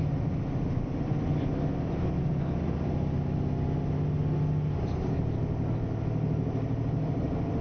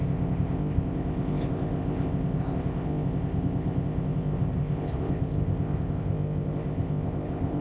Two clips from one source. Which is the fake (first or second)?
second